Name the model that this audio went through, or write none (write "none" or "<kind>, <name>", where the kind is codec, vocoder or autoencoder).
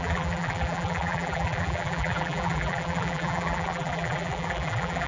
vocoder, BigVGAN v2